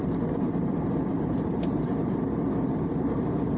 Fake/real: fake